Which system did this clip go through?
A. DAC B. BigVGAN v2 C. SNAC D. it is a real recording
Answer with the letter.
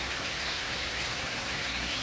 C